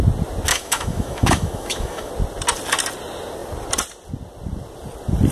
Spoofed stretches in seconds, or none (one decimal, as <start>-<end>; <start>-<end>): 0.5-2.1